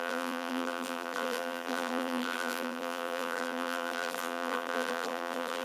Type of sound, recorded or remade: remade